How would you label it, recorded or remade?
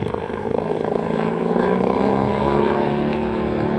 remade